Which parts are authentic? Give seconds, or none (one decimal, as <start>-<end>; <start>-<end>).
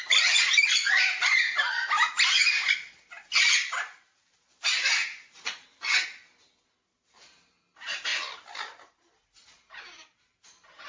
0.0-10.9